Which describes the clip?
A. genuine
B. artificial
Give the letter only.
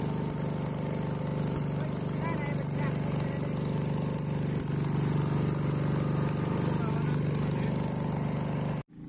A